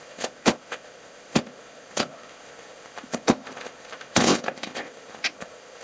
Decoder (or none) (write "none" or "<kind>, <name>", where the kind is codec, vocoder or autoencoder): codec, ZipCodec